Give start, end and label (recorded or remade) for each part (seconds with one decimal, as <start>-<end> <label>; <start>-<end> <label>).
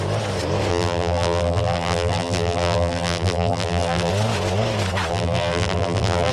0.0-0.7 recorded; 0.7-4.1 remade; 4.1-5.1 recorded; 5.1-6.3 remade